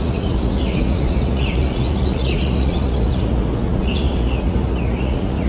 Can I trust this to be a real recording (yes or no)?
no